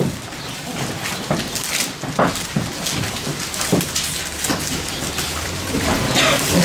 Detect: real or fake real